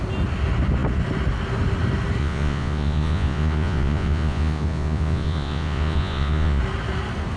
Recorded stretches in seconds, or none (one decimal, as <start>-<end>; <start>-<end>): 0.0-2.2; 6.6-7.4